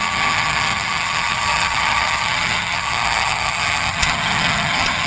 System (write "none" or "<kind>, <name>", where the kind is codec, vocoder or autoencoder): vocoder, HiFi-GAN